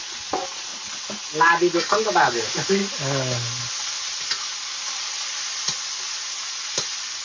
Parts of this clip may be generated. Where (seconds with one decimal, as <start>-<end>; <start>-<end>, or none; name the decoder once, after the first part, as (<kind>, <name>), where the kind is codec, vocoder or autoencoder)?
none